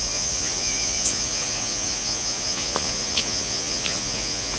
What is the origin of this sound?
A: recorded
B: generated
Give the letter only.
B